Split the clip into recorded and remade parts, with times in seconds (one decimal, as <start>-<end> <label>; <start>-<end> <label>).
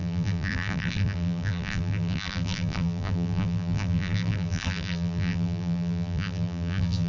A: 0.0-7.1 remade